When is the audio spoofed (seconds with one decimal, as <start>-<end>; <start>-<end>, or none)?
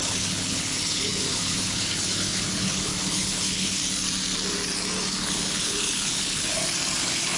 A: 0.0-3.8; 5.1-6.5; 7.0-7.4